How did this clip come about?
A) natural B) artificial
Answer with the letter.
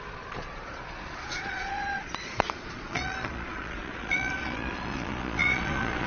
B